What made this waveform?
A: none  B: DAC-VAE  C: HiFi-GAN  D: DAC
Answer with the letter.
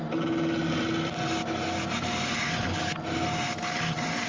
A